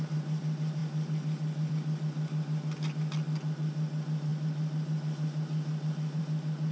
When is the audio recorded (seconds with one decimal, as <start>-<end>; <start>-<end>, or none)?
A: 0.0-6.7